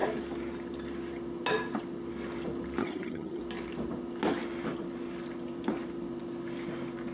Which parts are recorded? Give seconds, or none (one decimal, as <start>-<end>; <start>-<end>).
0.0-2.8; 3.4-7.1

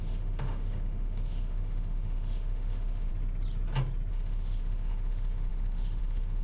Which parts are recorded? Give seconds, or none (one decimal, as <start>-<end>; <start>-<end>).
3.1-4.1

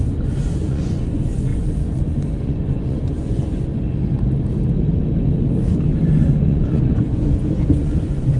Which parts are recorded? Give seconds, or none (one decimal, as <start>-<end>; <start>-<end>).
3.7-6.4

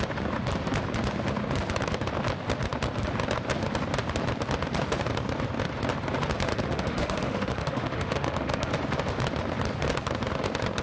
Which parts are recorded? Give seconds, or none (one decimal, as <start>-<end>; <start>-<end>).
0.0-6.5; 8.7-10.8

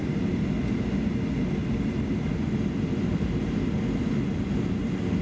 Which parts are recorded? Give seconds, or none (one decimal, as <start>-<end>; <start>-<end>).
0.0-5.2

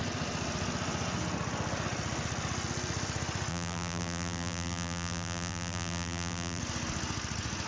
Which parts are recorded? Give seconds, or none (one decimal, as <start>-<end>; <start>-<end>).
0.0-3.5; 6.6-7.7

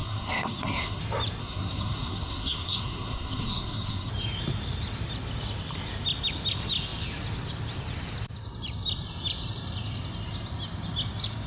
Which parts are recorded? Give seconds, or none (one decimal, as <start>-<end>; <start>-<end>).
1.0-1.4; 4.1-11.5